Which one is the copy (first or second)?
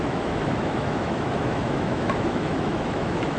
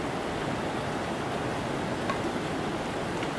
first